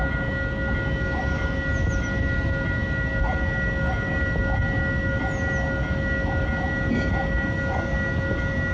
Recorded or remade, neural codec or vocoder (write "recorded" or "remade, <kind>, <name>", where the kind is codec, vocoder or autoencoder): recorded